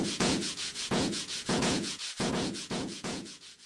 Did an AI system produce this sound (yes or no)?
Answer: yes